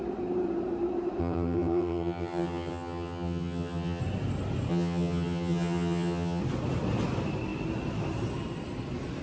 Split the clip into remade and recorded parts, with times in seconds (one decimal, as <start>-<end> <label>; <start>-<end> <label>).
0.0-1.2 recorded; 1.2-4.0 remade; 4.0-4.7 recorded; 4.7-6.4 remade; 6.4-9.2 recorded